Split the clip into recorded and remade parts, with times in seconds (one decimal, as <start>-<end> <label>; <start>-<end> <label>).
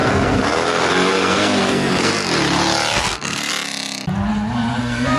0.0-2.1 remade; 2.1-3.0 recorded; 3.0-3.5 remade; 3.5-4.8 recorded; 4.8-5.2 remade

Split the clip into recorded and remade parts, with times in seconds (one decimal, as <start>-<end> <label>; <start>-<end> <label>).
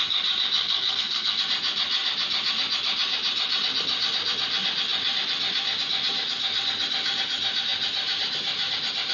0.0-0.6 recorded; 0.6-1.4 remade; 1.4-9.1 recorded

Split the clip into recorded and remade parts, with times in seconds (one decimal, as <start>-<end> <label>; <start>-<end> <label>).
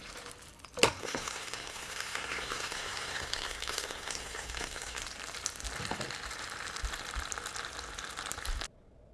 0.0-1.0 recorded; 1.0-5.0 remade; 5.0-9.1 recorded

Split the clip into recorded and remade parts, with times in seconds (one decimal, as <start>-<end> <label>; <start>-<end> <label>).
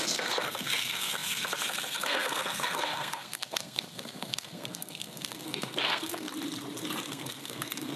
0.0-6.3 remade; 6.3-7.1 recorded; 7.1-8.0 remade